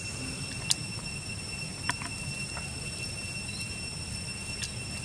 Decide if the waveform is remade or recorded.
recorded